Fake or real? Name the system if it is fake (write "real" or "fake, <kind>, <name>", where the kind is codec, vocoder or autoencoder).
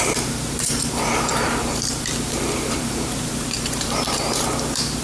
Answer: fake, vocoder, BigVGAN v2